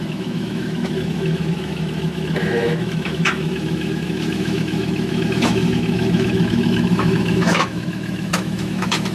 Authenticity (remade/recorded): remade